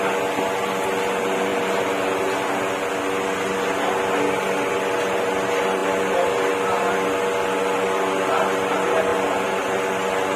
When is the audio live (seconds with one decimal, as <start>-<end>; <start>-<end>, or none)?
0.0-10.4